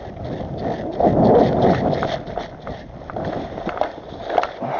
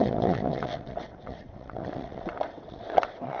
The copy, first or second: second